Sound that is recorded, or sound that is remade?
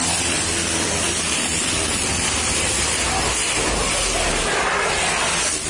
recorded